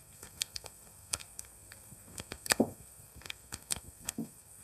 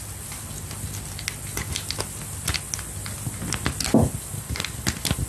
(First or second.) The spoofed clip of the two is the first